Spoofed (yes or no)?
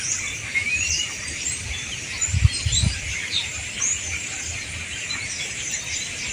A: yes